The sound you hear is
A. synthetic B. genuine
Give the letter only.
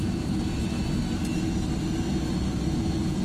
B